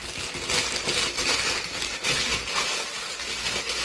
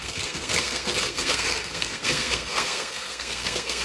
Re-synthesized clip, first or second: second